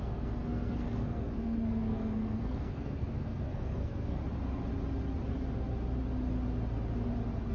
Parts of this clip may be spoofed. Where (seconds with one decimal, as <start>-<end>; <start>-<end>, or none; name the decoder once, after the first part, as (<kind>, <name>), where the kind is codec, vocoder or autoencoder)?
0.0-4.2 (codec, SNAC)